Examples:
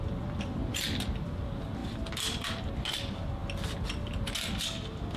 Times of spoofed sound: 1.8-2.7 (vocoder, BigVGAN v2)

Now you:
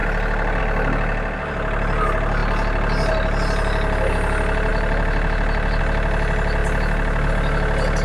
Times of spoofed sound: 4.7-5.8 (vocoder, BigVGAN v2)

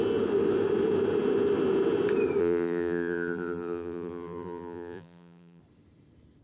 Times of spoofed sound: 2.4-5.6 (vocoder, BigVGAN v2)

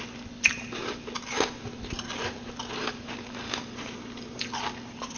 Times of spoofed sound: none